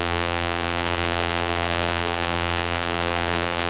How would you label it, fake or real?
fake